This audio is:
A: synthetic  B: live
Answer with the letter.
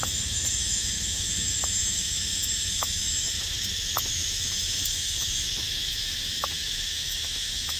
A